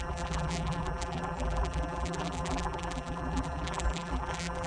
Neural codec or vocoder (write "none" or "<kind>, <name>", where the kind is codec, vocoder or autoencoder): vocoder, BigVGAN v2